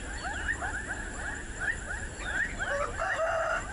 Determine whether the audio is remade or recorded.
recorded